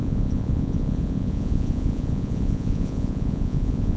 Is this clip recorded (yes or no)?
no